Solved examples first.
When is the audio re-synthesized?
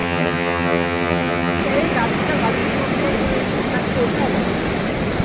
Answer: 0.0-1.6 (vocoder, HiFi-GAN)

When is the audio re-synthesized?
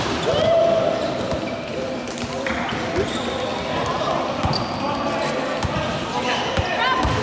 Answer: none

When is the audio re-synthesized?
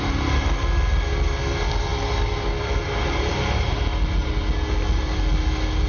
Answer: none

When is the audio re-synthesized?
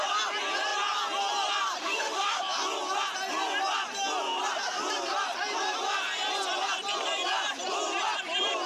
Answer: 1.8-2.4 (autoencoder, DAC-VAE)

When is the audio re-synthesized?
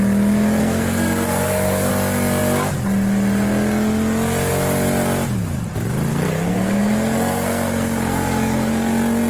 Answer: 0.6-1.9 (codec, SNAC); 6.1-8.7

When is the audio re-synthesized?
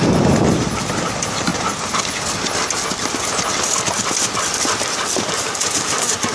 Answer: none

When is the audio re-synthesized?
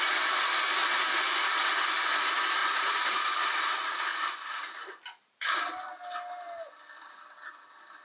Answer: 2.6-3.4 (vocoder, BigVGAN v2)